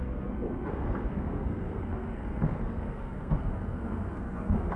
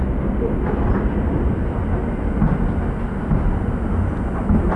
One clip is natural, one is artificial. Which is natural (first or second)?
second